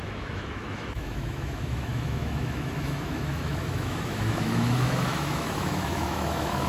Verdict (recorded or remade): remade